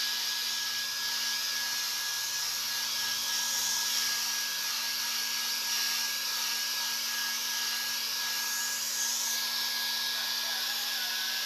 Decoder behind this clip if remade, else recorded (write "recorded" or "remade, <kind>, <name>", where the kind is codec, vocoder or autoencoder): recorded